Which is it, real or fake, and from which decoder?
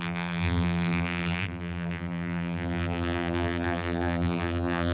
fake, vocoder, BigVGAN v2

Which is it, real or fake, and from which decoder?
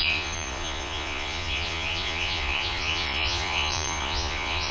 fake, vocoder, Vocos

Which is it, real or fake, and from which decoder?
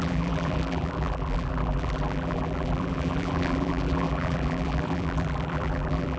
fake, vocoder, BigVGAN v2